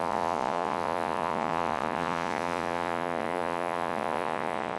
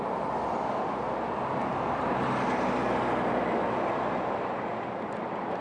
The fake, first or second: first